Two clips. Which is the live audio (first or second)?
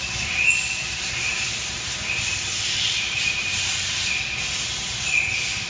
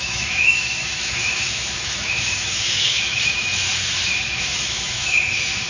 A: first